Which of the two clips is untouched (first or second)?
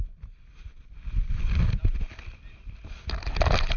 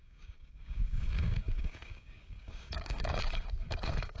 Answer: first